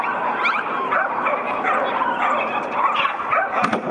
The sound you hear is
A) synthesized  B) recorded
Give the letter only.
B